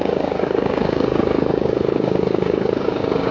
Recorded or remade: remade